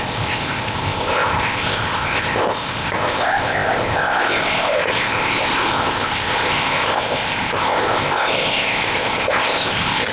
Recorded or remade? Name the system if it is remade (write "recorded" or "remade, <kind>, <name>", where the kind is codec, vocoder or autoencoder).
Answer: remade, codec, ZipCodec